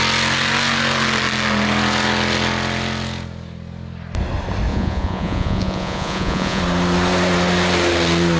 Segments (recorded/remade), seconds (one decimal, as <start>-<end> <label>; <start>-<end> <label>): 0.0-4.7 recorded; 4.7-6.6 remade; 6.6-8.4 recorded